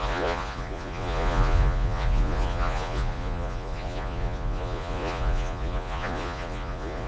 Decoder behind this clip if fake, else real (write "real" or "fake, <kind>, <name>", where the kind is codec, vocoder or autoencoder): fake, vocoder, Vocos